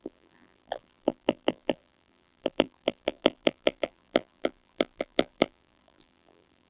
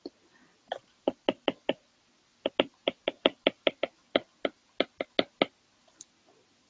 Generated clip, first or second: first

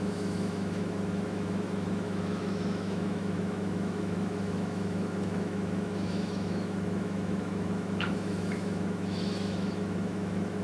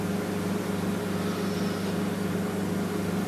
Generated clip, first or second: first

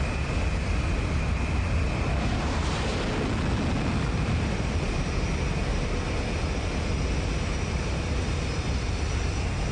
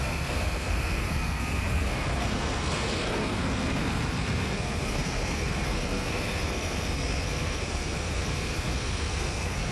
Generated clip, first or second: second